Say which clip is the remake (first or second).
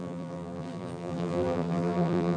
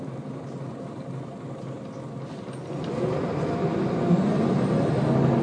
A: first